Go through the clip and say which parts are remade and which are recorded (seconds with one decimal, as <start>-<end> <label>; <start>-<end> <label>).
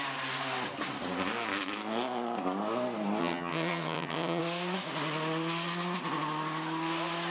0.0-3.2 recorded; 3.2-4.4 remade; 4.4-7.3 recorded